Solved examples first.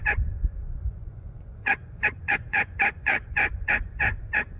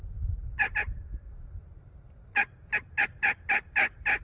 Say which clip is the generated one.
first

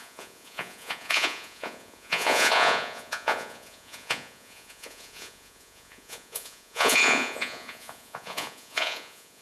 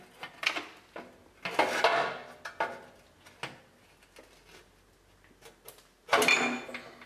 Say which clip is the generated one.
first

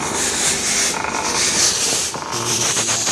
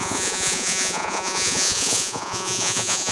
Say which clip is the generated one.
second